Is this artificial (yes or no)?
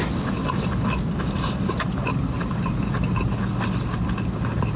no